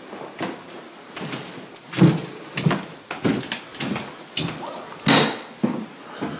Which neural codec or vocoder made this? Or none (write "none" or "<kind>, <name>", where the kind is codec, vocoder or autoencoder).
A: none